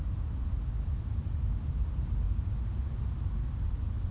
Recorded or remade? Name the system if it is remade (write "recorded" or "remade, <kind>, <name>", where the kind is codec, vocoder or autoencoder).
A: recorded